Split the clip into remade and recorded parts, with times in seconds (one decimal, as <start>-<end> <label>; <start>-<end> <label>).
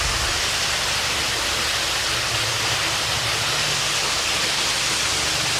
0.0-5.6 recorded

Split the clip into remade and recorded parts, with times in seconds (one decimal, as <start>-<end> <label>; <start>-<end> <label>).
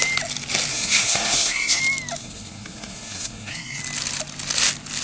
0.0-0.7 recorded; 0.7-1.8 remade; 1.8-2.2 recorded; 2.2-3.8 remade; 3.8-5.0 recorded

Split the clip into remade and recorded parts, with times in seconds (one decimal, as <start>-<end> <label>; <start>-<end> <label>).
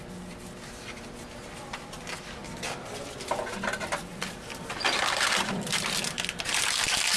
0.0-7.2 recorded